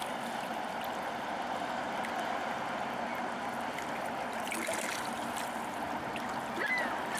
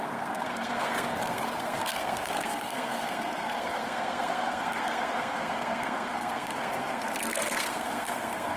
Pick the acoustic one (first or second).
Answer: first